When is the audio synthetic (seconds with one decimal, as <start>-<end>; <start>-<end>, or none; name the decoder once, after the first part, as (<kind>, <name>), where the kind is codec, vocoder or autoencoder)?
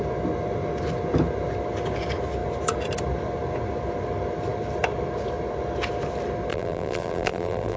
6.5-7.8 (vocoder, BigVGAN v2)